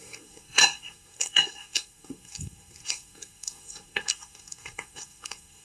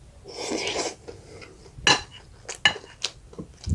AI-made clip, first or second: first